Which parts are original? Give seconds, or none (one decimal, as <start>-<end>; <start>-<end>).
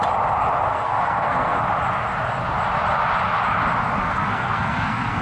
0.0-0.7; 1.6-4.0